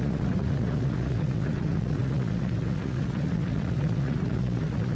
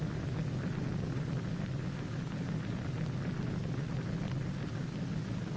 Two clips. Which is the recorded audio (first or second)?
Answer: second